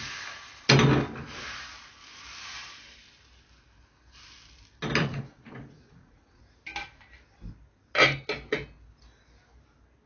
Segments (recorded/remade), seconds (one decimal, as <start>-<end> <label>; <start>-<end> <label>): 0.0-5.0 recorded; 5.0-6.4 remade; 6.4-10.1 recorded